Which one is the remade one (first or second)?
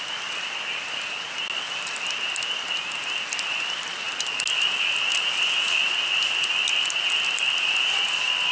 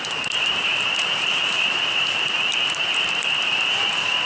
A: second